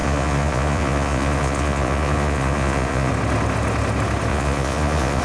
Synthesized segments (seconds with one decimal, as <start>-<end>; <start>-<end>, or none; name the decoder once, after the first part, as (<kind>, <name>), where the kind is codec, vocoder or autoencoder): 0.0-3.1 (vocoder, Vocos); 4.3-5.2